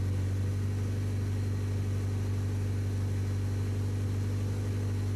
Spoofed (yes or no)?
no